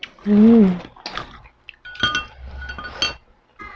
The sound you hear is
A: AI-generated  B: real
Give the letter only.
B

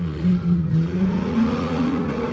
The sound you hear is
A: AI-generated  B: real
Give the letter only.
A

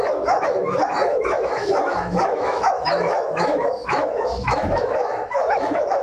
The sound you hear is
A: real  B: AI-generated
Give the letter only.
B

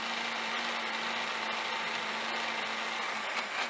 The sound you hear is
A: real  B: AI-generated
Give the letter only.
A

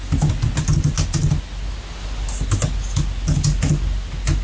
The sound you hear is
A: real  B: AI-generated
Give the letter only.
A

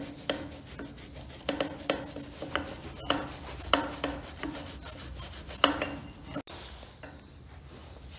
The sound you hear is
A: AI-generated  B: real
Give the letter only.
B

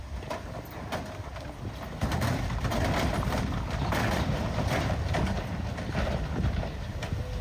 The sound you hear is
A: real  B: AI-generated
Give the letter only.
A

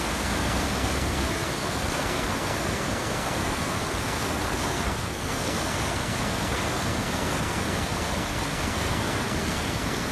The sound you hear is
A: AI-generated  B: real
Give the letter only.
A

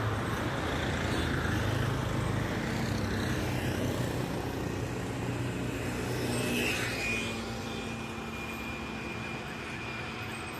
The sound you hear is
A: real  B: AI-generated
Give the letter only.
A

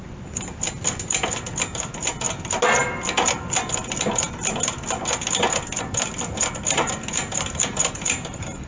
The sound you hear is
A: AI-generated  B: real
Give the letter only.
B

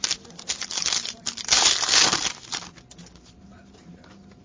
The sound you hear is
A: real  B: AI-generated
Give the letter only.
A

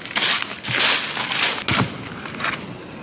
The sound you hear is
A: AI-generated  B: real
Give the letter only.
B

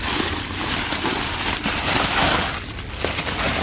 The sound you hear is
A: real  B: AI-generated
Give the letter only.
A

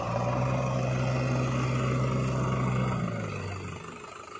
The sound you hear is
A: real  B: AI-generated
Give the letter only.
A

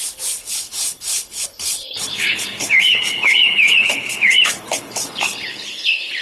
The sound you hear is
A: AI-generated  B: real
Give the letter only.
A